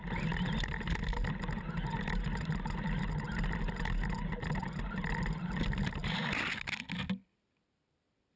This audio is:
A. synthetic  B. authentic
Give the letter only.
B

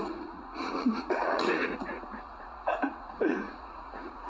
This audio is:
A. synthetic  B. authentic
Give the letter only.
A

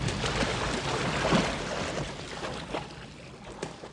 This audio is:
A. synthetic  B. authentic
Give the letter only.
B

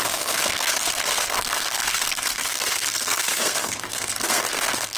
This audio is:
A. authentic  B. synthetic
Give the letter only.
B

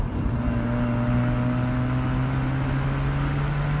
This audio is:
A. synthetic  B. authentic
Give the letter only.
B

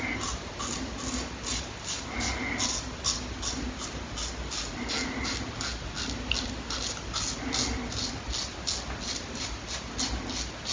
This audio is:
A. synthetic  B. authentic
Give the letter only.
B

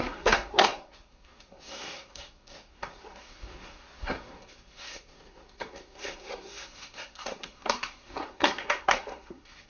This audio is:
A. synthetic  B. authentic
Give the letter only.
A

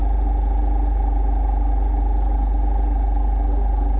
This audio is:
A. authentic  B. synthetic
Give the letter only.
A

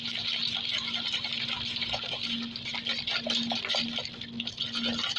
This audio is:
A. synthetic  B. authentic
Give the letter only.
B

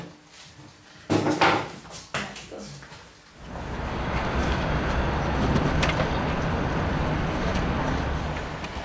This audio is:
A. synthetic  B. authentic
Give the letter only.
B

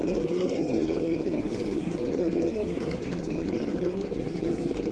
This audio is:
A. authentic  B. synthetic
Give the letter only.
B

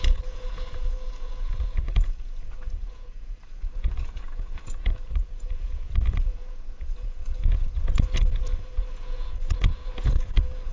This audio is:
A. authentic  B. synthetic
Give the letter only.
B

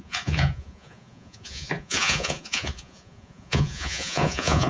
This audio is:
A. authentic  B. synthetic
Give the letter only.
B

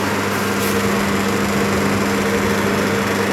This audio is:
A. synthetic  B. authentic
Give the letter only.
B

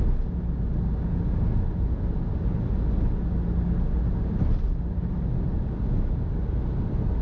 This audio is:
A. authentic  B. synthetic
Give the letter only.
A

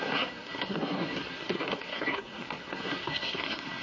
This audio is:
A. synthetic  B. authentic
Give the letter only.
A